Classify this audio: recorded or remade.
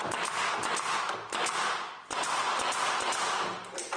recorded